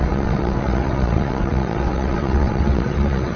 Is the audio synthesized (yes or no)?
yes